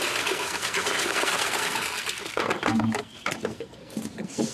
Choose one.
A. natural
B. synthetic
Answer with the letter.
B